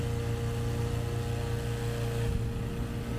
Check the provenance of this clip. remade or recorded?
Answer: recorded